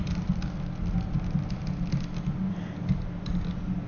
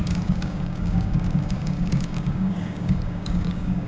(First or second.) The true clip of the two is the first